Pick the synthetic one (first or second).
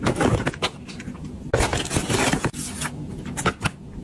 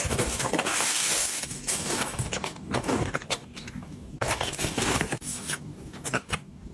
second